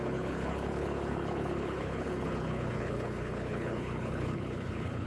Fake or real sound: fake